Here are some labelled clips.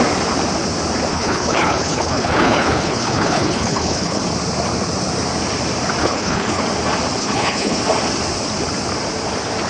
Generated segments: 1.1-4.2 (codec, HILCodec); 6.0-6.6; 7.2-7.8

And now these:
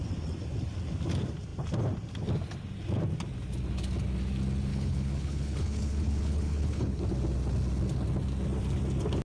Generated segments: 4.7-7.0 (codec, HILCodec)

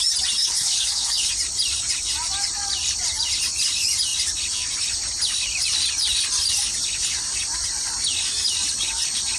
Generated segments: 0.4-1.3 (codec, HILCodec)

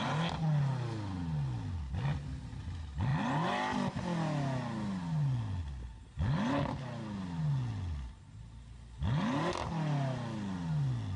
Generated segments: none

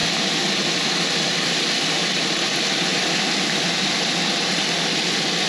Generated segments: none